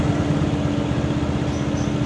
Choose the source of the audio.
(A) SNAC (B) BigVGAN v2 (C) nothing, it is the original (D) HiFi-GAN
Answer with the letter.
C